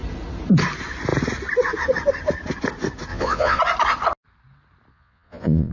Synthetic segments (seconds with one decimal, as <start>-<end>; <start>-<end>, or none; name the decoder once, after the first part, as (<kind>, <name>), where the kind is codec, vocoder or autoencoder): 3.1-3.6 (vocoder, Vocos); 4.9-5.7